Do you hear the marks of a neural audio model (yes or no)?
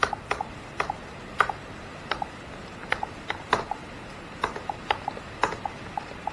no